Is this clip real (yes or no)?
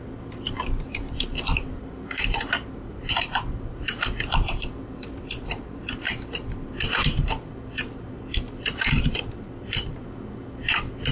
no